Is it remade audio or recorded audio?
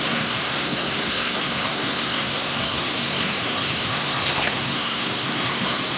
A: remade